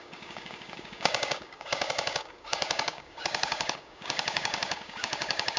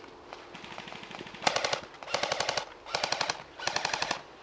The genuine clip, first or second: second